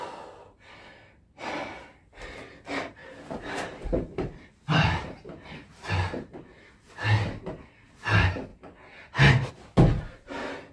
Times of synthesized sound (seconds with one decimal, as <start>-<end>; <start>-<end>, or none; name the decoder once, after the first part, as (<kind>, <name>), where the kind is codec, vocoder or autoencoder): 3.0-6.3 (vocoder, BigVGAN v2)